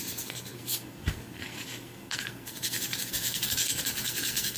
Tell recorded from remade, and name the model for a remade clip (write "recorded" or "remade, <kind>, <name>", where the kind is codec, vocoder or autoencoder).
remade, codec, SNAC